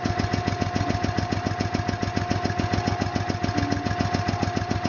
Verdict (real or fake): real